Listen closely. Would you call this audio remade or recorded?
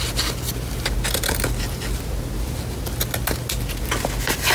recorded